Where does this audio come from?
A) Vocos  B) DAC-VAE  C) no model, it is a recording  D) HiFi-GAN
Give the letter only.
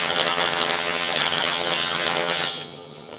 D